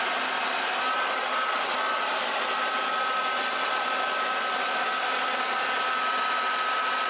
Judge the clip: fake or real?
real